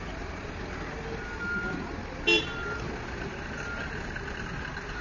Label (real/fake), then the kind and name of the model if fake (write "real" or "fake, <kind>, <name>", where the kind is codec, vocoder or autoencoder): real